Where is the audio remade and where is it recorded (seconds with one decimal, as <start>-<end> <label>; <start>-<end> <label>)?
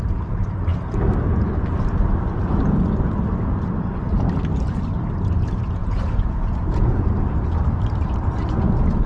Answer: 0.0-5.8 recorded; 5.8-7.1 remade; 7.1-9.1 recorded